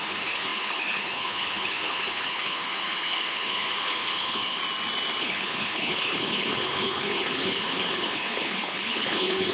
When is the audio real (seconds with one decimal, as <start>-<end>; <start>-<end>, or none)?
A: 4.6-5.2